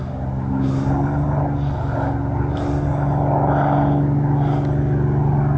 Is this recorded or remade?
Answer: recorded